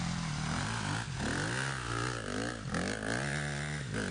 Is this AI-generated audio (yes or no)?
no